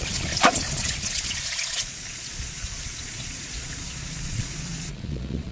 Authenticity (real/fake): fake